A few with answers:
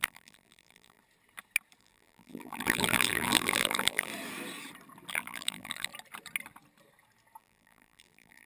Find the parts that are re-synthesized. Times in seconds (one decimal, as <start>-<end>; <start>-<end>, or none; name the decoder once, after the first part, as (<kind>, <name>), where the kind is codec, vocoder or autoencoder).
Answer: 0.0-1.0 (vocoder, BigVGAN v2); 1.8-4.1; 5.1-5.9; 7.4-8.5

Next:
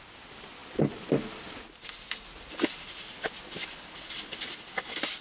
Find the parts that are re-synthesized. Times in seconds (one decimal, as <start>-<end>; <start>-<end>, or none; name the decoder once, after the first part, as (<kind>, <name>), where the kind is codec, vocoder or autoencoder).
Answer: none

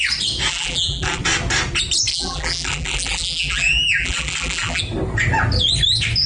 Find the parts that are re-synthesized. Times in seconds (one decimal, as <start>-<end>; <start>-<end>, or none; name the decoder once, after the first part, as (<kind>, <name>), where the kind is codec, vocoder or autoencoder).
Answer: 0.5-1.2 (vocoder, BigVGAN v2); 2.1-4.8